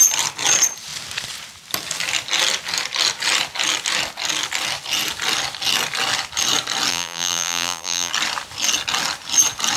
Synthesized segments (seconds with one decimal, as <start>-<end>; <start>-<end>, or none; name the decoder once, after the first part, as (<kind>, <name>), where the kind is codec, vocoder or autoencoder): 6.9-8.1 (vocoder, BigVGAN v2)